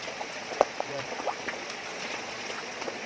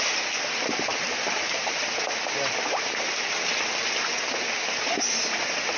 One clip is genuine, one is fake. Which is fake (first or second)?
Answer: first